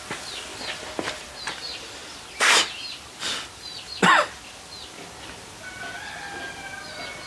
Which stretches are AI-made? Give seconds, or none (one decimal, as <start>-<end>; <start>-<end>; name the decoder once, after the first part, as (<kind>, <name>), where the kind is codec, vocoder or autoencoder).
0.5-1.3 (vocoder, BigVGAN v2)